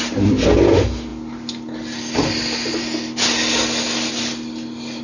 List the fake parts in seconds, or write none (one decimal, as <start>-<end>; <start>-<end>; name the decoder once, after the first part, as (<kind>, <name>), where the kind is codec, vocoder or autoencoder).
none